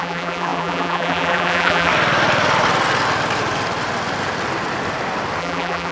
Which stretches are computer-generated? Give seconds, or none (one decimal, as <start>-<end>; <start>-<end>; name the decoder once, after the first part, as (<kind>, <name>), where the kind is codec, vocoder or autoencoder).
0.0-1.9 (vocoder, BigVGAN v2); 5.4-5.9